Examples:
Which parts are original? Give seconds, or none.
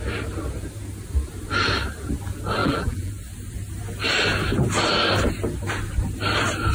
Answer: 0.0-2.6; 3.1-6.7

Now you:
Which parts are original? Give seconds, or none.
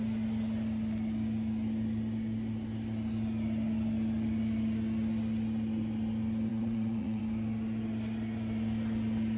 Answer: 0.0-6.5; 7.2-9.4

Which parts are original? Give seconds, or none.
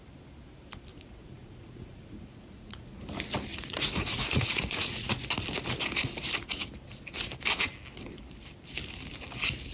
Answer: 0.0-0.9; 3.0-3.5; 5.1-9.7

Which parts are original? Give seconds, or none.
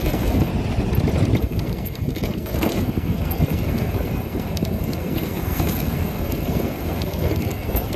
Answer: 0.5-1.4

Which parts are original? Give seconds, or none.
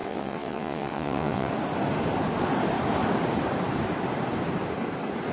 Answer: 1.5-5.3